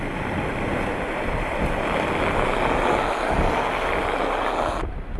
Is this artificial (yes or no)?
no